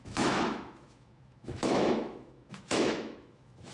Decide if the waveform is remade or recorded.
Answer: remade